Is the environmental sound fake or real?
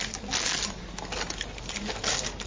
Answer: real